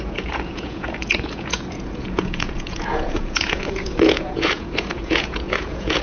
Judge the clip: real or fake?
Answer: fake